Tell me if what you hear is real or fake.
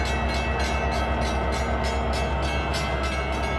real